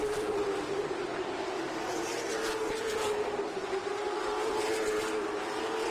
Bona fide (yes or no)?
no